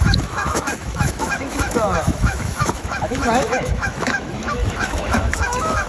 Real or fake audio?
fake